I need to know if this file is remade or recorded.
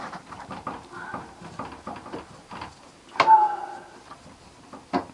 recorded